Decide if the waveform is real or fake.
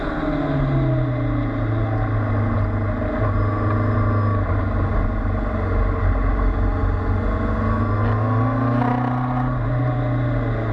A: real